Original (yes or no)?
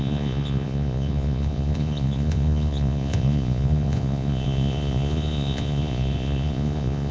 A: no